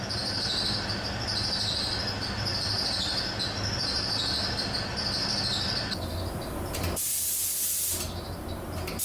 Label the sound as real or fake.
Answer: real